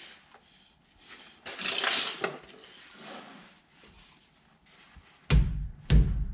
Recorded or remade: recorded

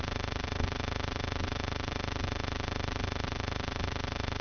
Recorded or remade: remade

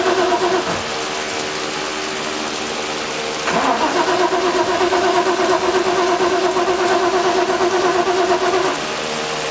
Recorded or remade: recorded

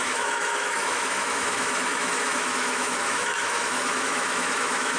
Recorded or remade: remade